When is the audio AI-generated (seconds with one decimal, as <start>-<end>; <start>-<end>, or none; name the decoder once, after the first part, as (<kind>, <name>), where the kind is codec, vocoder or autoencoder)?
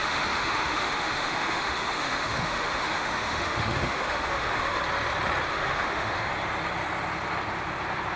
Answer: 0.0-4.8 (autoencoder, DAC-VAE); 5.5-6.3